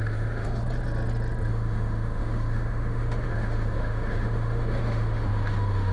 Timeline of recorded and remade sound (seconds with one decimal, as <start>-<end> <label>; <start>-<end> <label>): 0.0-0.6 remade; 0.6-1.5 recorded; 1.5-5.9 remade